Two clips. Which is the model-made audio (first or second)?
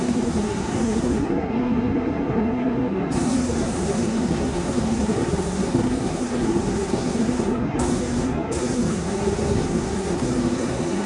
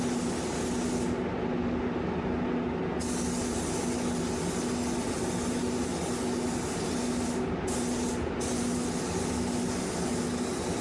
first